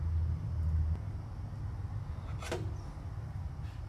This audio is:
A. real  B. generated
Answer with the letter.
A